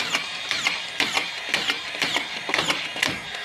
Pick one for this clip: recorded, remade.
remade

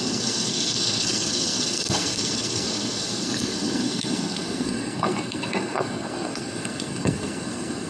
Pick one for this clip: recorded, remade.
remade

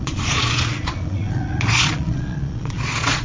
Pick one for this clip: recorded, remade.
remade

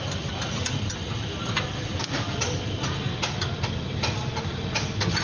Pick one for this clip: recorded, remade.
recorded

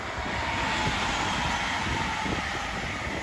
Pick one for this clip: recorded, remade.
recorded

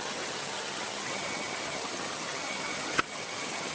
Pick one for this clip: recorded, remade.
remade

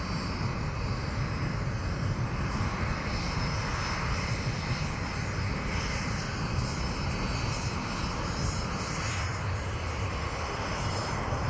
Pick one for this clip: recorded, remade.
recorded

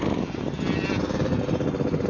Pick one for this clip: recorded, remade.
recorded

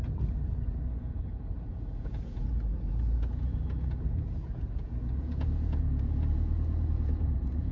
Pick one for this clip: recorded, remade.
remade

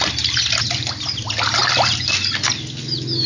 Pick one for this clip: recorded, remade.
recorded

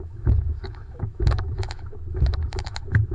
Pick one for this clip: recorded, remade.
remade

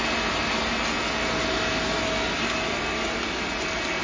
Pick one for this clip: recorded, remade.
recorded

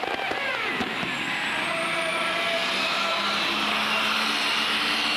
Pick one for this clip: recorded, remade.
recorded